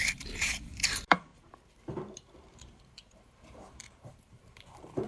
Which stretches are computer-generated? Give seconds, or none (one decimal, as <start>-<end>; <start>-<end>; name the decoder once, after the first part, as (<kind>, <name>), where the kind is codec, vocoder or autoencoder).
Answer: 0.0-5.1 (vocoder, BigVGAN v2)